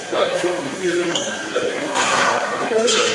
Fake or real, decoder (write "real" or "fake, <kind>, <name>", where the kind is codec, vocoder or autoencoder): fake, codec, SNAC